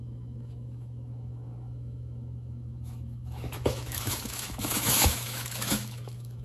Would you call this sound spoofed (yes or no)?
yes